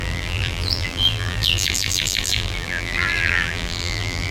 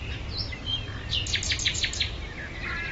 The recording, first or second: second